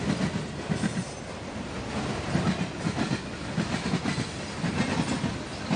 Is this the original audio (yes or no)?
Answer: yes